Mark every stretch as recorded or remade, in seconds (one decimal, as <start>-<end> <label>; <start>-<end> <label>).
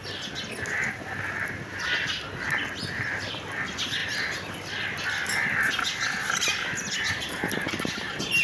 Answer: 0.0-8.4 recorded